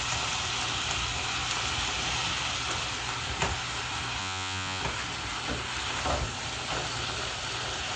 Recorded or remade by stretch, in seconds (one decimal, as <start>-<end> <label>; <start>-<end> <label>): 0.0-4.2 recorded; 4.2-4.8 remade; 4.8-8.0 recorded